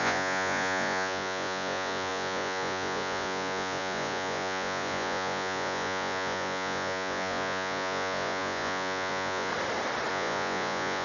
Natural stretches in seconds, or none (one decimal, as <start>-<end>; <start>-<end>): 9.5-10.1